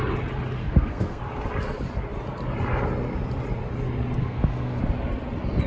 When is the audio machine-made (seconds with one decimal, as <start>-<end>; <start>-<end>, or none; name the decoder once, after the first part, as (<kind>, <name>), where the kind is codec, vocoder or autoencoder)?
0.6-1.2 (codec, SNAC); 4.2-4.8